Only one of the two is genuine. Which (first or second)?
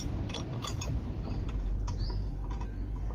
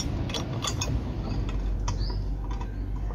second